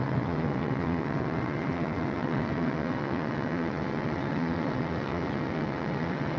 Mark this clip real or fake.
fake